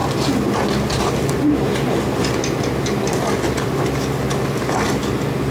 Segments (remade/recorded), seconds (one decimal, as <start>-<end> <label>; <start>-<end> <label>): 0.0-5.5 recorded